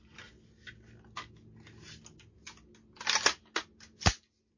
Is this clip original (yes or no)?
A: yes